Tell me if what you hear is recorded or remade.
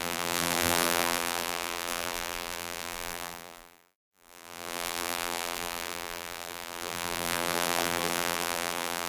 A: remade